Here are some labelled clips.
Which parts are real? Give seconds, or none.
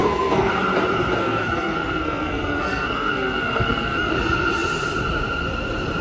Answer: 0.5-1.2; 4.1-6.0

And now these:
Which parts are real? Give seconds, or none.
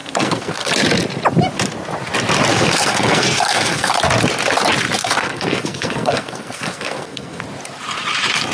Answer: 0.7-2.5; 3.9-5.0; 7.4-8.5